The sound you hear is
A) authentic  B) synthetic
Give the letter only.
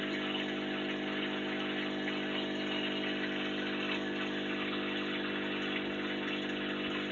A